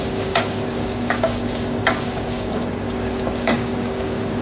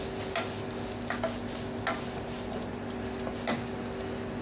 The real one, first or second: second